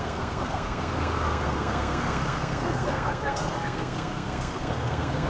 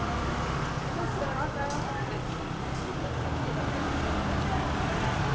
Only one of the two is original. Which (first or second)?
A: second